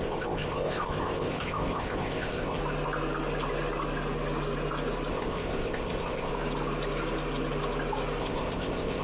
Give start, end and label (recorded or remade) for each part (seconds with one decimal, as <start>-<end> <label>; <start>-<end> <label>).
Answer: 0.0-2.6 remade; 2.6-5.1 recorded; 5.1-6.3 remade; 6.3-8.2 recorded; 8.2-9.0 remade

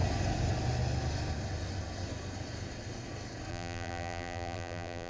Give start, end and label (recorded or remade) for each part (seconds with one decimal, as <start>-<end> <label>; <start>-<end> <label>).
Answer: 0.0-3.5 recorded; 3.5-5.1 remade

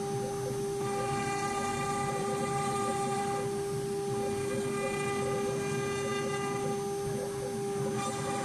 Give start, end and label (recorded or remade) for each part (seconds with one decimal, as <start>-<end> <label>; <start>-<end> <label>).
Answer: 0.0-1.7 recorded; 1.7-3.2 remade; 3.2-8.4 recorded

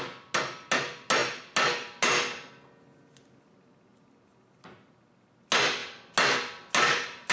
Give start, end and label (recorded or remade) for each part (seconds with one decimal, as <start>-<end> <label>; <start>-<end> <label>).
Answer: 0.0-7.3 recorded

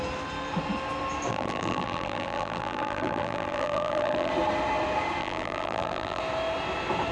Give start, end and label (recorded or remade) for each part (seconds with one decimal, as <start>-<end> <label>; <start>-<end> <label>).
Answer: 0.0-1.3 recorded; 1.3-4.3 remade; 4.3-5.2 recorded; 5.2-6.2 remade; 6.2-7.1 recorded

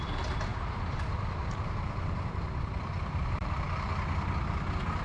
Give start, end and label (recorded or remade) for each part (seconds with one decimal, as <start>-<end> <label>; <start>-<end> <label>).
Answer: 0.0-0.5 recorded; 0.5-3.5 remade; 3.5-5.0 recorded